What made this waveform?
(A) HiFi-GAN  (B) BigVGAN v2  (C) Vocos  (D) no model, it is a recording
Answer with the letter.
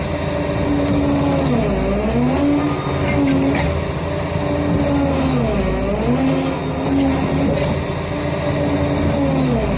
D